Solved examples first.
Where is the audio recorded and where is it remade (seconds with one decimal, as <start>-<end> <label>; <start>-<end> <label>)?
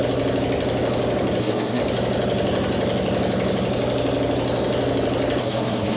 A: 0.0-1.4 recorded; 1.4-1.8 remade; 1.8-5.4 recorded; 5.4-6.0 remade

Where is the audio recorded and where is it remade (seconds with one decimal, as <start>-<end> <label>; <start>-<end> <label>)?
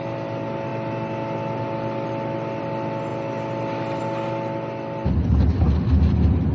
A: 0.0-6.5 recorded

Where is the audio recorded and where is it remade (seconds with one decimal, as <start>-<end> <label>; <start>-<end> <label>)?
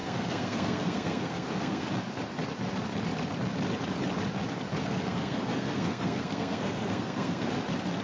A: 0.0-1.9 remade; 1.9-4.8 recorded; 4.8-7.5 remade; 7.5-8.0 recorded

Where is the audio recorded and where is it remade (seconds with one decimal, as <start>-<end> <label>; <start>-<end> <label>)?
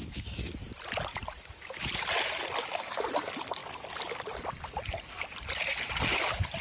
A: 0.0-1.8 remade; 1.8-3.6 recorded; 3.6-5.0 remade; 5.0-6.6 recorded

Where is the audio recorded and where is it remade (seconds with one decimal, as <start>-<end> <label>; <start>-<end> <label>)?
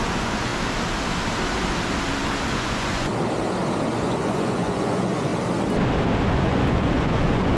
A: 0.0-0.5 remade; 0.5-2.5 recorded; 2.5-3.1 remade; 3.1-3.9 recorded; 3.9-5.3 remade; 5.3-6.3 recorded; 6.3-7.6 remade